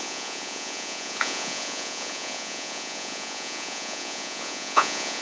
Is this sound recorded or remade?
remade